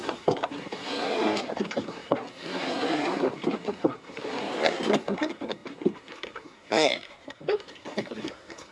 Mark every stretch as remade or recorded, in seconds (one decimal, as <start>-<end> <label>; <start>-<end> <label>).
0.0-8.7 remade